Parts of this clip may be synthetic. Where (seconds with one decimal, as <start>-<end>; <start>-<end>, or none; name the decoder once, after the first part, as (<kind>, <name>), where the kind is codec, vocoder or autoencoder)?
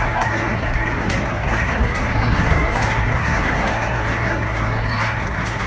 0.0-5.7 (codec, SNAC)